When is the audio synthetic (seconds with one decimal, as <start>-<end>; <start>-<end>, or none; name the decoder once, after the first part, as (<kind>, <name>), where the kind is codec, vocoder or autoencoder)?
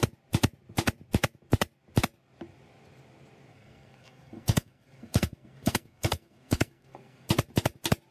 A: 3.5-7.3 (codec, SNAC)